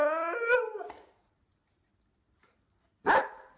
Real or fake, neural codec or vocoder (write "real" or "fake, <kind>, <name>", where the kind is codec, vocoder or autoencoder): real